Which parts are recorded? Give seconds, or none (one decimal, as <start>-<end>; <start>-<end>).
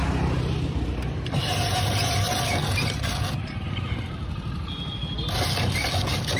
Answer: 0.0-6.4